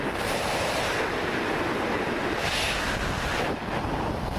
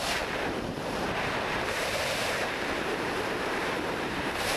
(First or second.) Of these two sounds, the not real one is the second